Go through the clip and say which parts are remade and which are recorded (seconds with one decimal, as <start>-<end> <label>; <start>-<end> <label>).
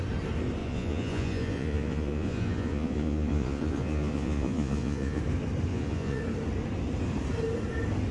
0.0-0.6 recorded; 0.6-5.2 remade; 5.2-5.7 recorded; 5.7-6.2 remade; 6.2-8.1 recorded